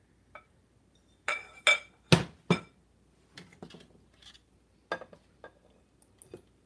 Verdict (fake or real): real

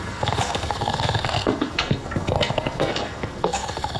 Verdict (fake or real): fake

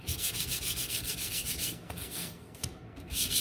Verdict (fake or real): fake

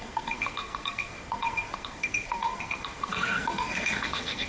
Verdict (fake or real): fake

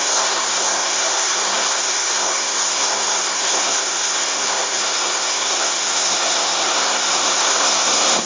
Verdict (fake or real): fake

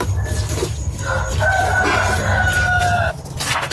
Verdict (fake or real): real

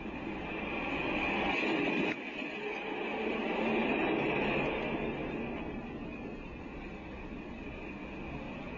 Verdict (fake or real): real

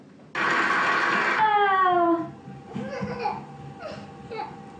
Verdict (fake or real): real